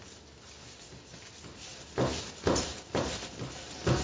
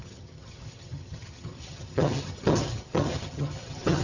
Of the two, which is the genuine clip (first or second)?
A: first